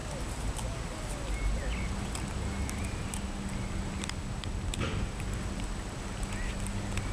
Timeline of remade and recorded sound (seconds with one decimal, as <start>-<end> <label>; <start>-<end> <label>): 0.0-7.1 recorded